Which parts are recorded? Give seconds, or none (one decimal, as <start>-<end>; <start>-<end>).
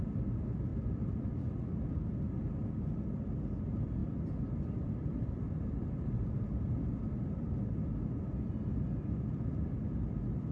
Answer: 0.0-0.7; 2.3-4.0; 7.3-10.5